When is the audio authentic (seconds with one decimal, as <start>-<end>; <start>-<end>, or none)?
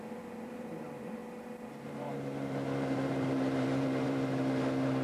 1.2-1.7